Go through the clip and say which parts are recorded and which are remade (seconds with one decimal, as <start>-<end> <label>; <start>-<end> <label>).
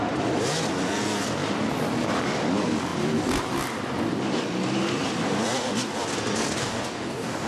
0.0-6.5 recorded; 6.5-7.5 remade